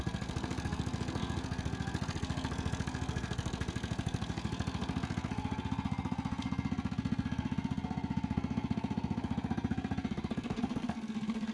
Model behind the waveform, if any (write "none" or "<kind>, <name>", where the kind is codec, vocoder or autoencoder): codec, SNAC